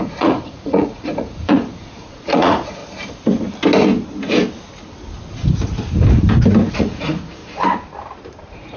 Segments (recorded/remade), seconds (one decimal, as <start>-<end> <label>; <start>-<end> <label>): 0.0-2.8 remade; 2.8-6.7 recorded; 6.7-7.4 remade; 7.4-8.4 recorded; 8.4-8.8 remade